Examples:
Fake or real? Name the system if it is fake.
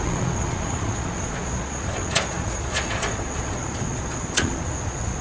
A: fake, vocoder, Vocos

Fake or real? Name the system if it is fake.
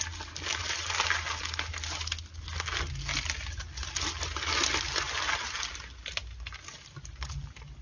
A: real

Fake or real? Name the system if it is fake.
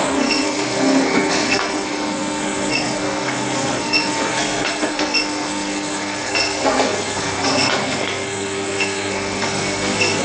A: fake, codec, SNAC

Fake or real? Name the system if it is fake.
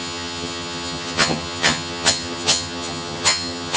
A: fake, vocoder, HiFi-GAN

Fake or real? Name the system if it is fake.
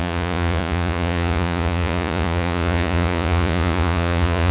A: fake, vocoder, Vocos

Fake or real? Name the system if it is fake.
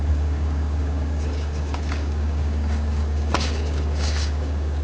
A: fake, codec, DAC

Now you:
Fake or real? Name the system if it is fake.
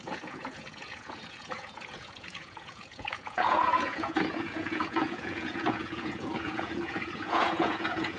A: fake, vocoder, Vocos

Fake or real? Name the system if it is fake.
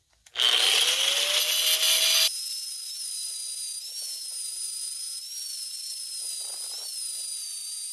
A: real